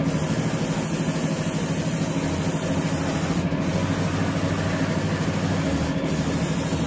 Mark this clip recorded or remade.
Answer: recorded